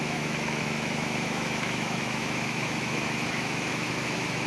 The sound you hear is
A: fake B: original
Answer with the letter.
A